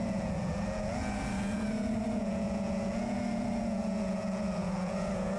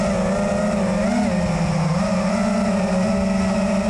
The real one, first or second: second